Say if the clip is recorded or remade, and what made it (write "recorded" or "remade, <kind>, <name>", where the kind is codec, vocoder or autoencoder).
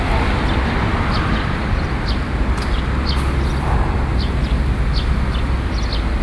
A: recorded